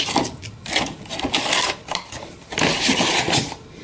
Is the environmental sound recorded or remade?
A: recorded